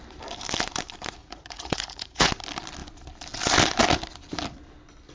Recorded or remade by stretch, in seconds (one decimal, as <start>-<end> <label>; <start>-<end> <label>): 0.0-1.2 recorded; 1.2-2.3 remade; 2.3-5.1 recorded